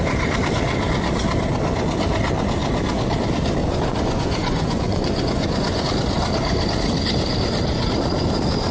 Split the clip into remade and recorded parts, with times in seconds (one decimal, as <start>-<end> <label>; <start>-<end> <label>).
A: 0.0-3.6 recorded; 3.6-5.8 remade; 5.8-8.7 recorded